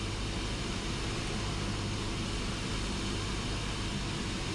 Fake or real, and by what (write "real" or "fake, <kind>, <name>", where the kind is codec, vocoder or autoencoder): real